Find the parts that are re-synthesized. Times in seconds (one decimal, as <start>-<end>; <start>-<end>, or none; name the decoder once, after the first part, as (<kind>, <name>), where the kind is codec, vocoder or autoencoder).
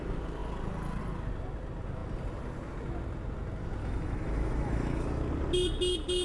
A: 3.8-5.2 (autoencoder, DAC-VAE)